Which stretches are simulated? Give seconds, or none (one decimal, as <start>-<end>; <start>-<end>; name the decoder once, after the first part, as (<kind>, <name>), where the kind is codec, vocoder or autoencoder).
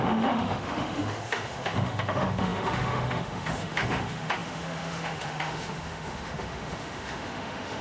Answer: 0.0-7.8 (autoencoder, DAC-VAE)